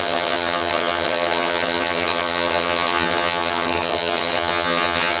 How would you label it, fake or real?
fake